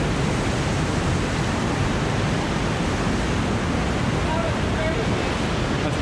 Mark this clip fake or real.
real